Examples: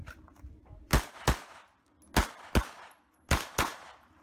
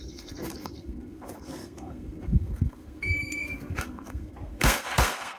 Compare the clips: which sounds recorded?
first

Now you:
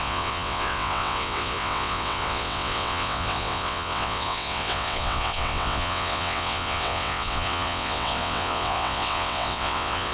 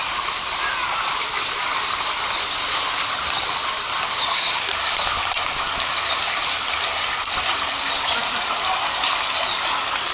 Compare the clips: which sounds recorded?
second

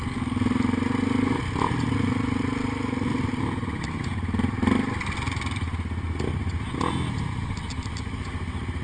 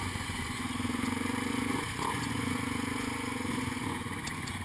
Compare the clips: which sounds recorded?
first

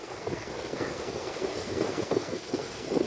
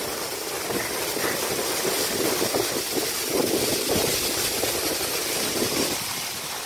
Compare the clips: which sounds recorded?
second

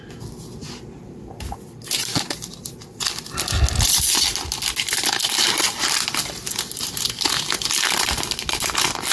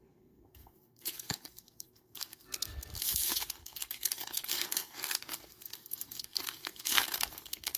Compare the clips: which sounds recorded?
first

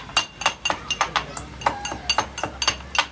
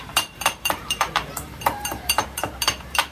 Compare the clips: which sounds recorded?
first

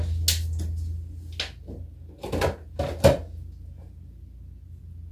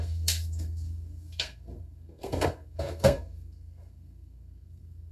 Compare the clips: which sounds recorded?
first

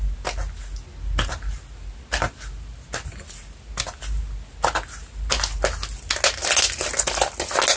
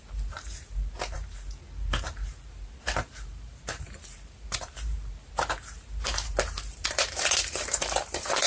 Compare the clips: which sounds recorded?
first